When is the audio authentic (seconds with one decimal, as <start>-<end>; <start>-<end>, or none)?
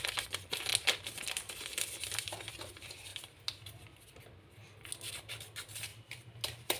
0.0-6.8